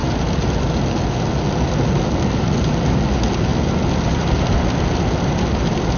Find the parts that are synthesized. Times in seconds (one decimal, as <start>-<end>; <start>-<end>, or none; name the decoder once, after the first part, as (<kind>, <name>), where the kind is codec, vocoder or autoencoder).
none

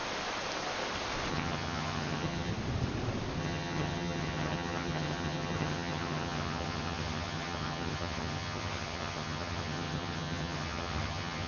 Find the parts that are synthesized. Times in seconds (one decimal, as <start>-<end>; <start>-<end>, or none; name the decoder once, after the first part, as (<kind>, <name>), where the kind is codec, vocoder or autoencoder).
1.3-2.5 (vocoder, HiFi-GAN); 3.4-11.5

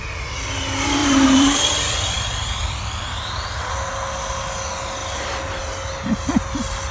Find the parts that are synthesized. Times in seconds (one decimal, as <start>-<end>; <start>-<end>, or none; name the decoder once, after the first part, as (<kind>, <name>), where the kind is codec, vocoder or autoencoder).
1.0-3.7 (vocoder, BigVGAN v2); 5.0-5.6

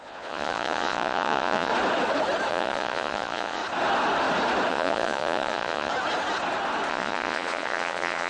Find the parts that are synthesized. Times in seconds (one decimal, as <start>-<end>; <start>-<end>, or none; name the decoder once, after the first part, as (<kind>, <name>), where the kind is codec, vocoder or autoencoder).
0.0-1.7 (vocoder, Vocos); 2.5-3.6; 4.7-5.9; 6.9-8.3

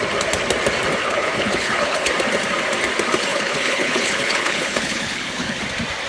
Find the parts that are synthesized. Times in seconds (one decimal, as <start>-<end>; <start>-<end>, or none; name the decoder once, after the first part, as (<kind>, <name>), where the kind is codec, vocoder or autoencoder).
1.0-2.1 (codec, HILCodec); 3.3-5.6